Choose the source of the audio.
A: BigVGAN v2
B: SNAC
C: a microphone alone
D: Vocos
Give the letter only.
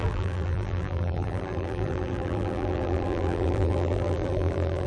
A